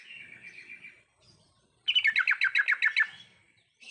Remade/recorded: recorded